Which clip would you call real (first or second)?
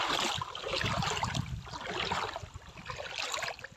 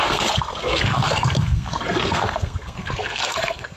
first